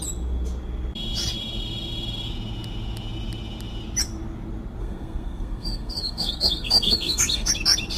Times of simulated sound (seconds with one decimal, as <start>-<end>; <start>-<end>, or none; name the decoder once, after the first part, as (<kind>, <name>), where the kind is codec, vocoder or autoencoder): 4.8-7.5 (codec, SNAC)